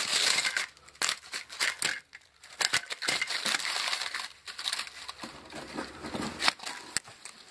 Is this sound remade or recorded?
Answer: recorded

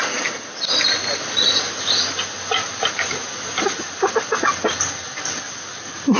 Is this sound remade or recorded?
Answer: recorded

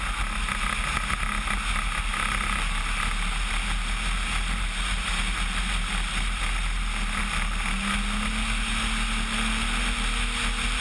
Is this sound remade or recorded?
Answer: recorded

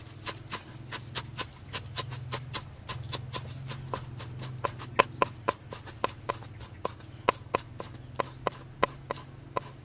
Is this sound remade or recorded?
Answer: recorded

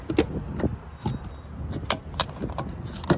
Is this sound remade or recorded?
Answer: recorded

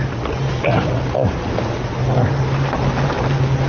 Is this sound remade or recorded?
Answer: recorded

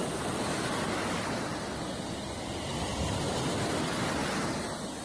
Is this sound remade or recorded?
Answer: recorded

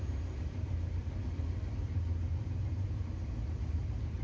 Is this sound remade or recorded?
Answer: recorded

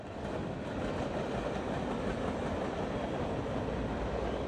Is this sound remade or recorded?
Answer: recorded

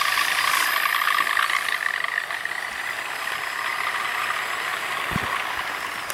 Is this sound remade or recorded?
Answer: remade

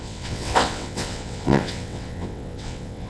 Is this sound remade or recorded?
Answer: remade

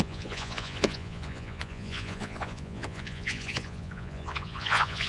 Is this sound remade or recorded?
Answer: remade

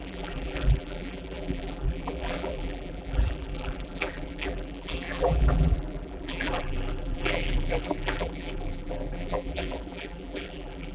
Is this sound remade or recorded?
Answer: remade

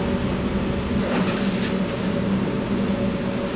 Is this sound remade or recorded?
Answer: recorded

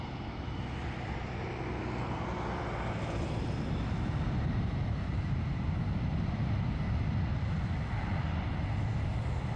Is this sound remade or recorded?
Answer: recorded